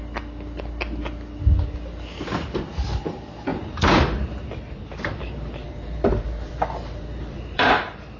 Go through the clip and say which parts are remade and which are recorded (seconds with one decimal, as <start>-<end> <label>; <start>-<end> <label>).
0.0-3.5 recorded; 3.5-8.2 remade